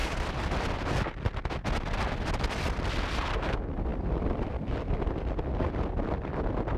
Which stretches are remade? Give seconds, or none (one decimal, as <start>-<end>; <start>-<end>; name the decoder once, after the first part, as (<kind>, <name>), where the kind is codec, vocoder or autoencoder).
3.9-5.8 (vocoder, BigVGAN v2)